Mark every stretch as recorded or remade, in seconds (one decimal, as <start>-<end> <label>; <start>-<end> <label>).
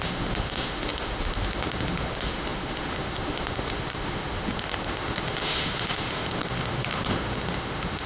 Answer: 0.0-8.1 remade